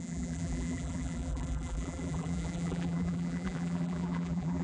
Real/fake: fake